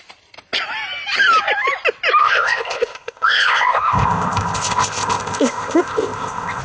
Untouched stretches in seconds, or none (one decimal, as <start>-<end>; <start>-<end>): 0.0-2.2